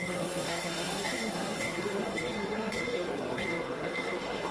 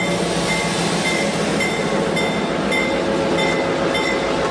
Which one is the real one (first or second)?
second